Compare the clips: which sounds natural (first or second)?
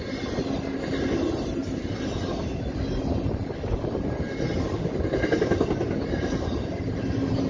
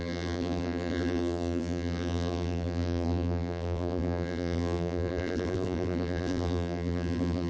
first